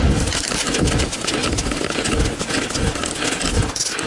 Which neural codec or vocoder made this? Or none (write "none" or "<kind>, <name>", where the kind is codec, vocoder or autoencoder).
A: none